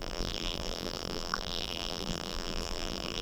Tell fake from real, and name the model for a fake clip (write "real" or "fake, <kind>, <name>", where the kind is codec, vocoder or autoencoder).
fake, vocoder, BigVGAN v2